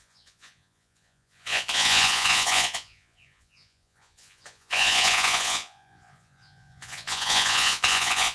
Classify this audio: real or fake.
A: fake